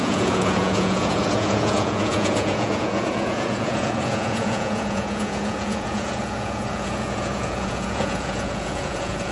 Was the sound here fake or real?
fake